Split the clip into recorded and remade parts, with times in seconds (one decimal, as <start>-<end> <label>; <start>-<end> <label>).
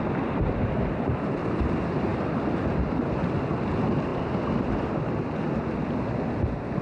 0.0-6.8 recorded